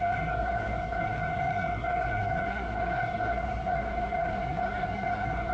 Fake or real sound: fake